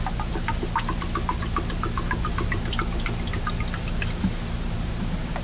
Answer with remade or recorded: recorded